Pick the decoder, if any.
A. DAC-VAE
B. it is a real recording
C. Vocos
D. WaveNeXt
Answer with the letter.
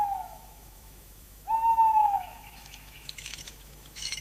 A